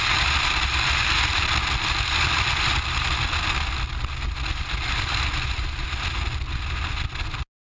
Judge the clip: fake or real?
real